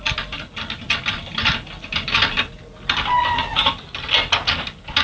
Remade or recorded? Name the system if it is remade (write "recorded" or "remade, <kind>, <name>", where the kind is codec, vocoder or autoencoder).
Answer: recorded